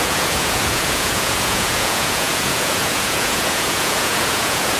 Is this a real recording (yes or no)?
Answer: no